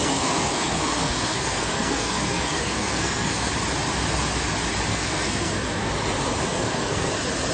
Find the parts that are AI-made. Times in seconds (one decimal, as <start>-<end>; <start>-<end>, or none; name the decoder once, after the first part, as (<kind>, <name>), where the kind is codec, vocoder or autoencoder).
0.0-3.5 (codec, SNAC); 4.9-5.9; 6.5-7.1